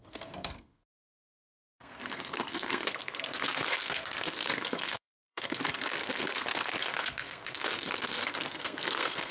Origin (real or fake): fake